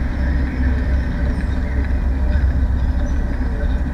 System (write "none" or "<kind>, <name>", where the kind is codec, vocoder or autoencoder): none